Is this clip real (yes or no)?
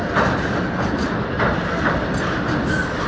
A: yes